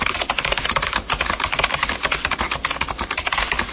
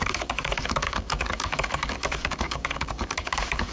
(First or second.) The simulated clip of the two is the second